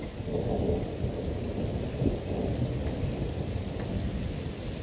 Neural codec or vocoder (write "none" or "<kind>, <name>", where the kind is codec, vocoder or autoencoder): none